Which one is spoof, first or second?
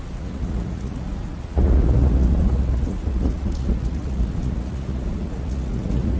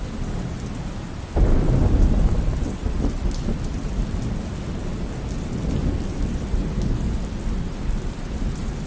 first